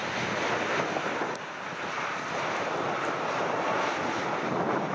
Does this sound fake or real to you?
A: real